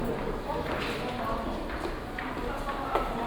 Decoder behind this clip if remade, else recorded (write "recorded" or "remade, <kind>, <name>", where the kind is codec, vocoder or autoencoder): recorded